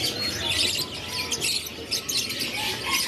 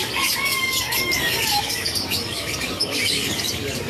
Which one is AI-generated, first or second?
second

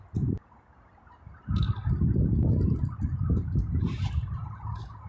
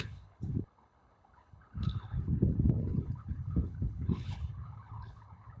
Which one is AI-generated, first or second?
second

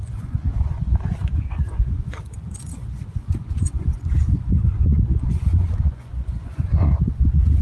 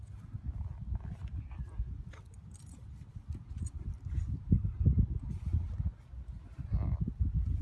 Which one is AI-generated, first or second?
first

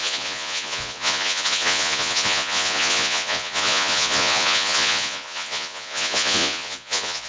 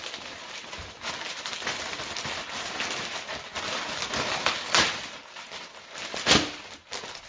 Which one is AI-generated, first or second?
first